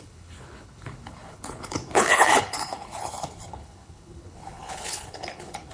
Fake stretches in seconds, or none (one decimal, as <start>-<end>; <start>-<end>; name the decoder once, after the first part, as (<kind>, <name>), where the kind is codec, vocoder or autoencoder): 0.0-5.7 (codec, HILCodec)